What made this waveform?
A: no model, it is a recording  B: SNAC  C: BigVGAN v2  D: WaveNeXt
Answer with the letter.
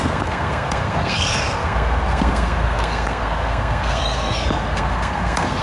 B